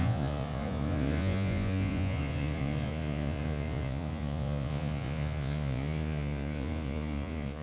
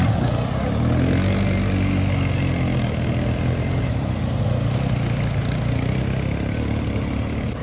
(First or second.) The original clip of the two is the second